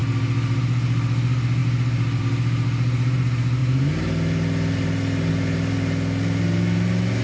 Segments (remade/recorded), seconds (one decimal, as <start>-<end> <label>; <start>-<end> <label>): 0.0-7.2 recorded